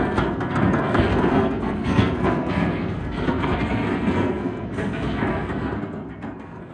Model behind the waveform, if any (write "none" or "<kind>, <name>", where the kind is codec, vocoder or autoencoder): codec, SNAC